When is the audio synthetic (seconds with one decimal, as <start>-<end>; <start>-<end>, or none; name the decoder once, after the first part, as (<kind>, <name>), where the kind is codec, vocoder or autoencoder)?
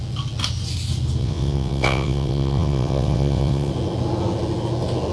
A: 1.2-3.7 (vocoder, WaveNeXt)